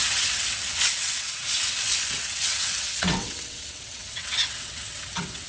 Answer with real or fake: fake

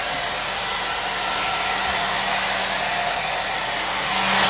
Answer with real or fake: real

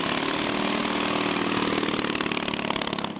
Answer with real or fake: real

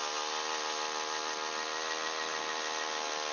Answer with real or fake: real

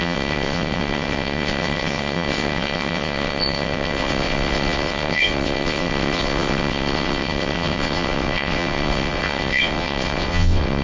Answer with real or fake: fake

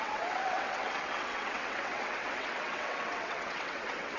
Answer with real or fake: fake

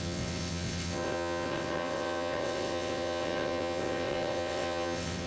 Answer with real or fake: fake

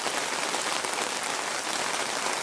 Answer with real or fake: real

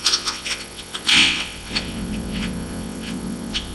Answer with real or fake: fake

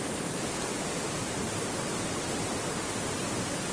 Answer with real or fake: real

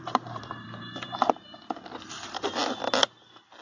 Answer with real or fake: real